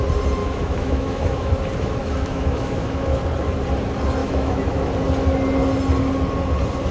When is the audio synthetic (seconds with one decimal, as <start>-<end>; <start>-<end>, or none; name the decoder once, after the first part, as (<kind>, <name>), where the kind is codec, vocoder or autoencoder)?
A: 0.4-1.5 (autoencoder, DAC-VAE); 2.0-3.2; 4.2-4.9